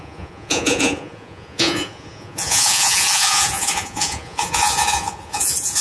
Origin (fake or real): fake